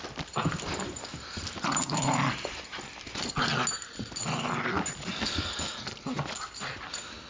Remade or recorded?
recorded